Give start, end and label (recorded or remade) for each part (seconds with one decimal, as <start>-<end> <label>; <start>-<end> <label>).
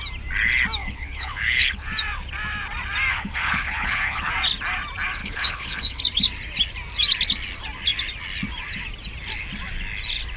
0.0-0.8 recorded; 0.8-1.9 remade; 1.9-3.1 recorded; 3.1-4.3 remade; 4.3-5.2 recorded; 5.2-6.0 remade; 6.0-10.4 recorded